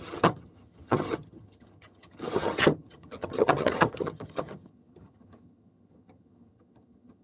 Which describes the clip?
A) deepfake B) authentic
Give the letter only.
A